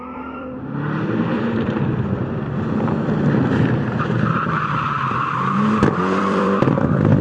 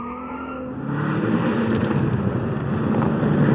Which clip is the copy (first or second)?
first